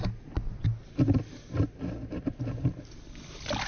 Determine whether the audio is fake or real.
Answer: real